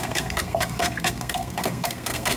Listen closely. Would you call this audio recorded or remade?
remade